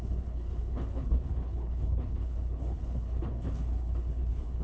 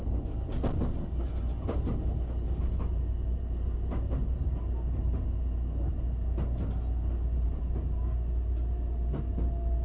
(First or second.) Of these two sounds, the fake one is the first